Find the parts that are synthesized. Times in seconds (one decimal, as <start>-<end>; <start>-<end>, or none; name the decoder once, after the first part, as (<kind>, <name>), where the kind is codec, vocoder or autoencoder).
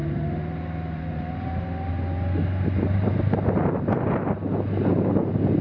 0.0-1.9 (vocoder, BigVGAN v2)